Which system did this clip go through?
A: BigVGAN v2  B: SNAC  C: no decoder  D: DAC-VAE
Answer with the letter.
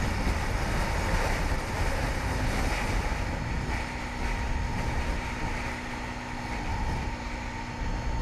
C